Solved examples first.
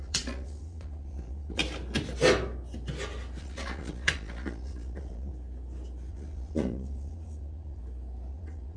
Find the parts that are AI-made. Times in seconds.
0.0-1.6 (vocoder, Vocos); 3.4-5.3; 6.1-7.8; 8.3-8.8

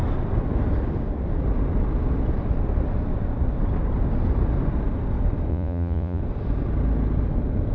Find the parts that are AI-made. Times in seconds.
5.5-6.2 (vocoder, Vocos)

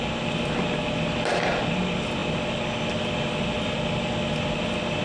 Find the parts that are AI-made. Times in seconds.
none

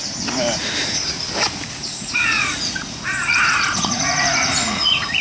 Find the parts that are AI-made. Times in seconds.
1.9-5.2 (vocoder, Vocos)